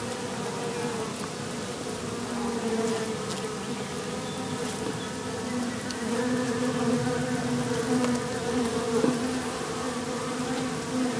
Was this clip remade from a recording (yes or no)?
no